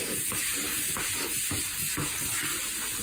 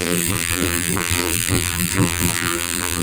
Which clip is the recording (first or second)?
first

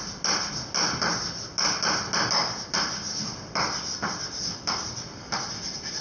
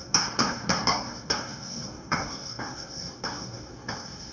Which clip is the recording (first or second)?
first